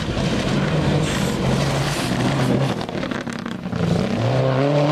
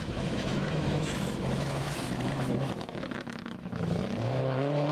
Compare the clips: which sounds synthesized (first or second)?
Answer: second